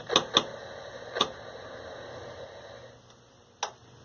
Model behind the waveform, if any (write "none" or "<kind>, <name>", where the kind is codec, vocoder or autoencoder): none